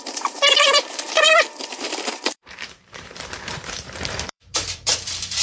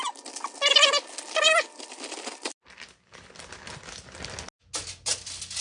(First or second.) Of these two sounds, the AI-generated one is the first